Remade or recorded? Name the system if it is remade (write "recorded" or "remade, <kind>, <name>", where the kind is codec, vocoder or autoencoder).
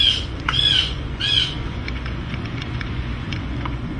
remade, vocoder, Vocos